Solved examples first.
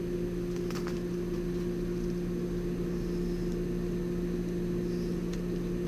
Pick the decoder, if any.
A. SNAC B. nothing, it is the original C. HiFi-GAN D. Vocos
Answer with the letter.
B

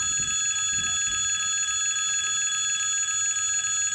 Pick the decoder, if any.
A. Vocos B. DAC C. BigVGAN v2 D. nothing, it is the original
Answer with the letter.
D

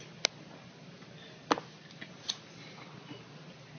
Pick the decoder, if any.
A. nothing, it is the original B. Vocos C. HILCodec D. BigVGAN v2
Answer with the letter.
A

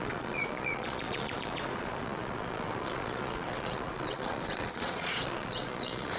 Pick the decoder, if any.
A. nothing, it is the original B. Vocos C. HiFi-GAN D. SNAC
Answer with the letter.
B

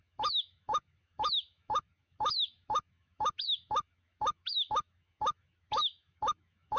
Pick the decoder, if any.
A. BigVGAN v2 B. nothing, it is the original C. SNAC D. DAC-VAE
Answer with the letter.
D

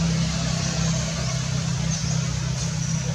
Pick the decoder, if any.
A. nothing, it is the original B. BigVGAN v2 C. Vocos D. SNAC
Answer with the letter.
A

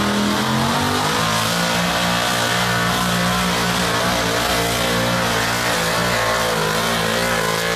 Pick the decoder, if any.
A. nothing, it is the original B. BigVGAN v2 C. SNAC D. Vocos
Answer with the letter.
A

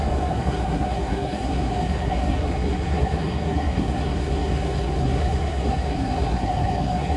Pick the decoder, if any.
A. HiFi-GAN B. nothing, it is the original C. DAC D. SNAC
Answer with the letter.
D